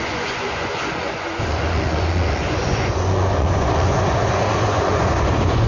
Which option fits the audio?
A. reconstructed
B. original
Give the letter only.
A